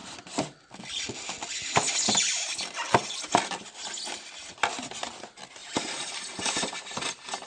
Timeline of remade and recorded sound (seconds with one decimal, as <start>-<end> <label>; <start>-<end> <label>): 0.0-5.6 recorded; 5.6-6.9 remade; 6.9-7.5 recorded